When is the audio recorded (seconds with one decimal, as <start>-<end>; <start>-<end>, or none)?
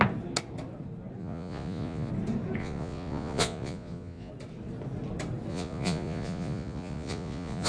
0.0-1.2; 2.1-2.6; 4.3-5.5